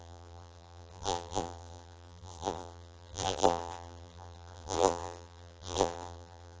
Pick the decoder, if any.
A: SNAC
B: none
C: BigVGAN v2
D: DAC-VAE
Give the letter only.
C